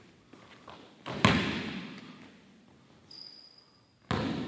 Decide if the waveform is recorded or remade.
recorded